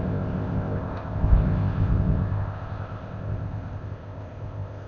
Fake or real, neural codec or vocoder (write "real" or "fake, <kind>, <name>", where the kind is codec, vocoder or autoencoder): fake, codec, ZipCodec